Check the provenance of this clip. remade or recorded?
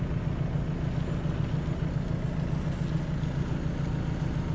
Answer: recorded